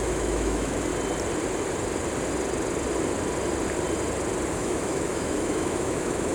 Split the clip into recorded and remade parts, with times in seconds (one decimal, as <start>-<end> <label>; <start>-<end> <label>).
0.0-0.9 remade; 0.9-4.5 recorded; 4.5-6.3 remade